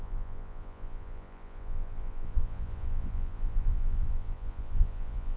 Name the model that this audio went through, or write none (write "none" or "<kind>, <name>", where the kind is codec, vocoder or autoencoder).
vocoder, Vocos